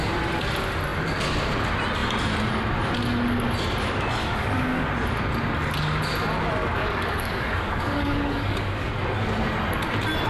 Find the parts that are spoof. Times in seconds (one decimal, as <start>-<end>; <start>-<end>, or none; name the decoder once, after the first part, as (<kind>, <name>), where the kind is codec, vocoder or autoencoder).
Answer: 4.2-4.9 (codec, DAC); 6.6-8.9